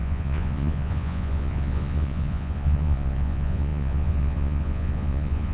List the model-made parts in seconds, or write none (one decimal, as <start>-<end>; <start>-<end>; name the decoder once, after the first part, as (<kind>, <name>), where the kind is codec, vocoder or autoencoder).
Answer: 0.0-5.5 (vocoder, Vocos)